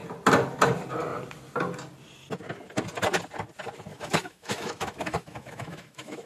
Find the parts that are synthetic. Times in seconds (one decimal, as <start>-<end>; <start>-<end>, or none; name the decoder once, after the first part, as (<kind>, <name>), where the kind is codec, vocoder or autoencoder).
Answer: 3.9-6.3 (autoencoder, DAC-VAE)